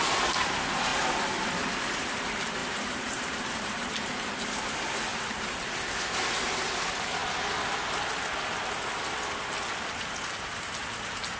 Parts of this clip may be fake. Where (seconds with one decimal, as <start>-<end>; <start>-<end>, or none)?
2.6-4.3; 5.1-5.6